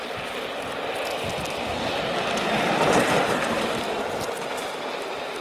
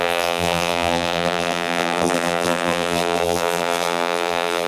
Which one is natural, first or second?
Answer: first